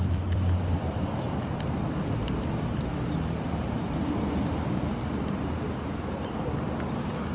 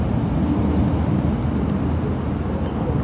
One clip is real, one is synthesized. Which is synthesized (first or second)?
first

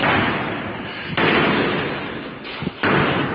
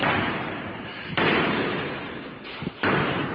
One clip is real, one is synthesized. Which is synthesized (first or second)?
second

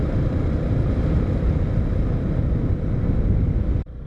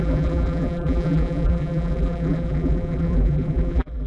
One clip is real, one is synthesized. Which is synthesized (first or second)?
second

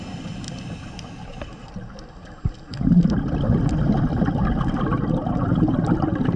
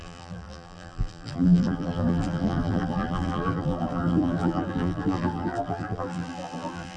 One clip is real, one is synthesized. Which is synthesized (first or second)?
second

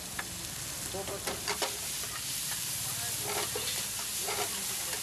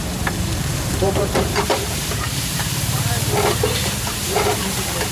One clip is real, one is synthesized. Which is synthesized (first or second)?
second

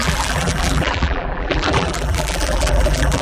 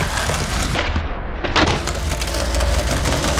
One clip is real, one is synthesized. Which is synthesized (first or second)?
first